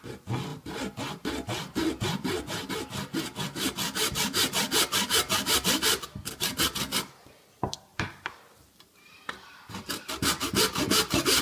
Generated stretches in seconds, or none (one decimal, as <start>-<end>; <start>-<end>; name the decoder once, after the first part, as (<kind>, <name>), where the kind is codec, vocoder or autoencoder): 7.9-10.1 (vocoder, BigVGAN v2)